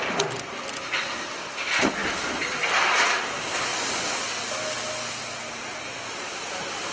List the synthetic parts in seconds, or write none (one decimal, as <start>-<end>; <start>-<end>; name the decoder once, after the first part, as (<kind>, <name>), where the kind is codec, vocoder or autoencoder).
none